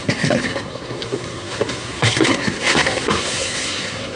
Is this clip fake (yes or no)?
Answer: yes